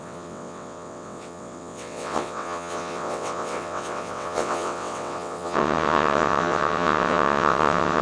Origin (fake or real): fake